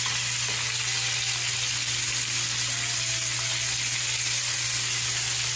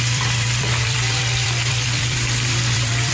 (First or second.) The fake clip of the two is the second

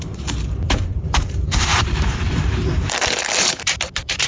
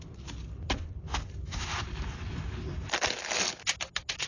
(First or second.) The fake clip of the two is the first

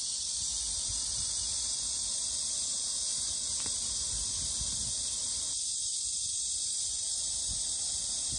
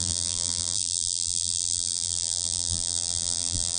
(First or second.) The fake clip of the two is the second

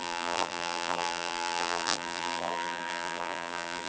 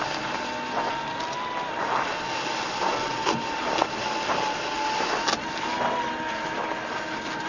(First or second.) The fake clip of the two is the first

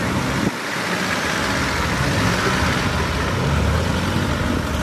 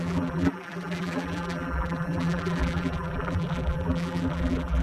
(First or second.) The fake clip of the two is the second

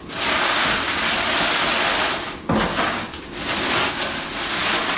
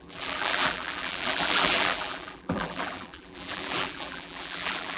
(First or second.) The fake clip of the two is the second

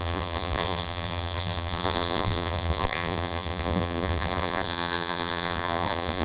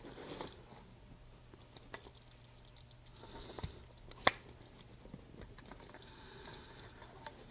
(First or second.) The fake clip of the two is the first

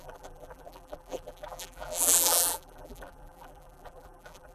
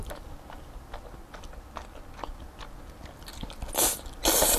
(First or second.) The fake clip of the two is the first